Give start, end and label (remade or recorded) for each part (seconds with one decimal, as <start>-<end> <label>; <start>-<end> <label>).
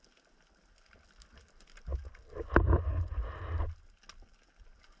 0.0-5.0 recorded